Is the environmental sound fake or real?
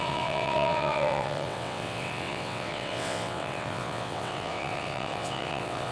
fake